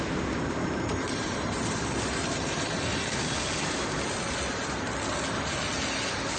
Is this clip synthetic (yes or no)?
no